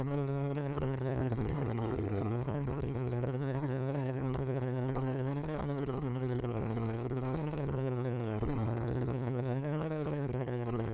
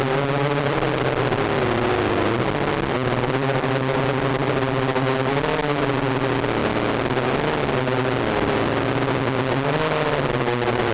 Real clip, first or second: second